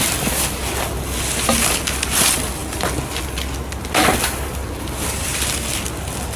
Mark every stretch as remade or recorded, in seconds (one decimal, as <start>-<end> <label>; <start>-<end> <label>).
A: 0.0-6.4 recorded